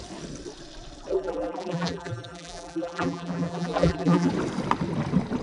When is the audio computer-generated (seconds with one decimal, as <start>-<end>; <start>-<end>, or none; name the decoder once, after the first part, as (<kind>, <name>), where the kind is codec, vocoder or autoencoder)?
1.1-4.3 (vocoder, BigVGAN v2)